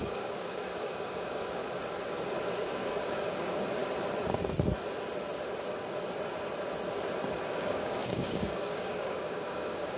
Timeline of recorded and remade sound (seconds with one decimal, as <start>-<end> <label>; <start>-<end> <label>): 0.0-1.6 remade; 1.6-2.5 recorded; 2.5-3.8 remade; 3.8-7.5 recorded; 7.5-10.0 remade